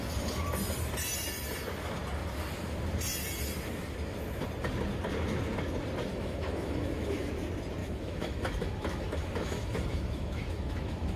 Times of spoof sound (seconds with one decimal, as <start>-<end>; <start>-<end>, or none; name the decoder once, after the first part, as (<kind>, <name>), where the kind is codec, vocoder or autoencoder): 6.1-7.3 (autoencoder, DAC-VAE); 7.8-11.2